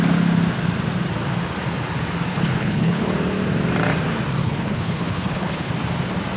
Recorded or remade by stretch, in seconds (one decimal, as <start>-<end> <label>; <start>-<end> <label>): 0.0-2.3 recorded; 2.3-3.1 remade; 3.1-4.4 recorded; 4.4-5.7 remade; 5.7-6.4 recorded